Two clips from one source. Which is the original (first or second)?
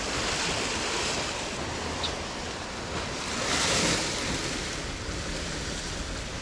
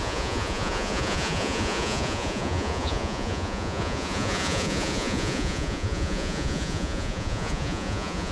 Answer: first